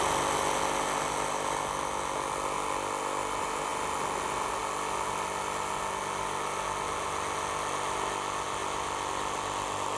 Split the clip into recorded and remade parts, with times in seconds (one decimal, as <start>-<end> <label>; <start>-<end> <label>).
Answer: 0.0-10.0 recorded